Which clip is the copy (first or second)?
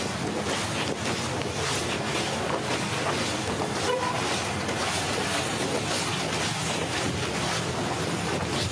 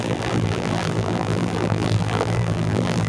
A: second